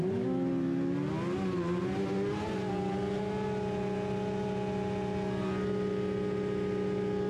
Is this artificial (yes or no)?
no